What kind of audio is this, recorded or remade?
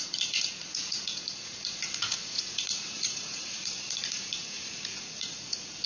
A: remade